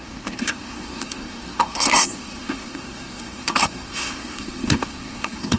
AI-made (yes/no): yes